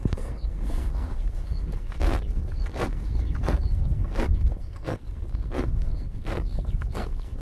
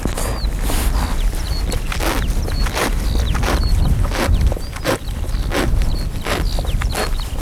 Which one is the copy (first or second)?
first